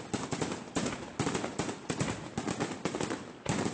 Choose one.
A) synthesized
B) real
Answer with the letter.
B